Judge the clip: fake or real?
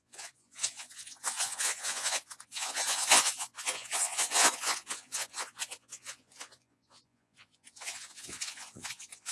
fake